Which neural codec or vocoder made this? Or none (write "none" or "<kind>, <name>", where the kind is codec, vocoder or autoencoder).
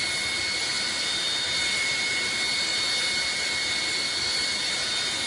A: none